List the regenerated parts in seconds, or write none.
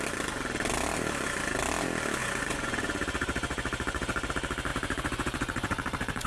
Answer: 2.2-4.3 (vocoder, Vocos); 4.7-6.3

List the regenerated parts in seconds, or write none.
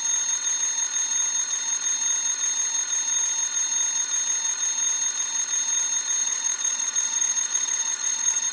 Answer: 6.2-8.5 (vocoder, Vocos)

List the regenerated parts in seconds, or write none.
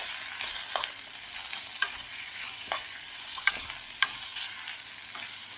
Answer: 1.8-3.5 (vocoder, Vocos)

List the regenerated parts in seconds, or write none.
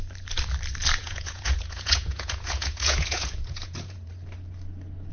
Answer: 1.0-4.1 (vocoder, Vocos)